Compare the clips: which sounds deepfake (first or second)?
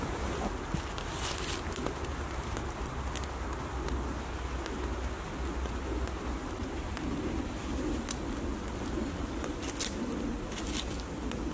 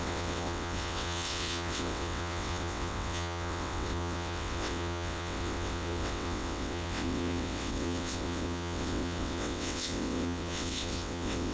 second